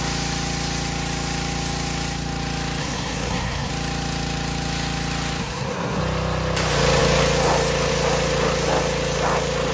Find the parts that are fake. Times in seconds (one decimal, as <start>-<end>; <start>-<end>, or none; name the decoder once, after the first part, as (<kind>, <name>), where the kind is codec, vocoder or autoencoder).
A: 2.8-3.7 (codec, SNAC); 5.4-6.0